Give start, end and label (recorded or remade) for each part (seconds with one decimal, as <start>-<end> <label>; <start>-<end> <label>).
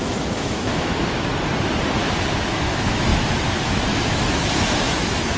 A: 0.0-1.3 remade; 1.3-2.5 recorded; 2.5-5.4 remade